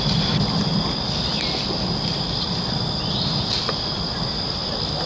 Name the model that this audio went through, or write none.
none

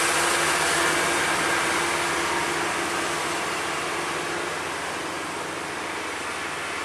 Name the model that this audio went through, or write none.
none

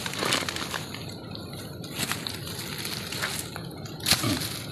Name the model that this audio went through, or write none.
none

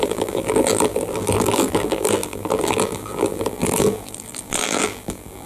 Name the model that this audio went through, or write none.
vocoder, BigVGAN v2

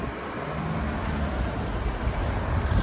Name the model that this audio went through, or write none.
none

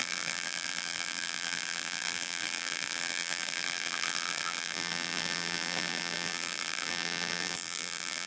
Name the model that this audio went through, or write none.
vocoder, BigVGAN v2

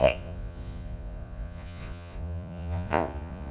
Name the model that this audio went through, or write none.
vocoder, Vocos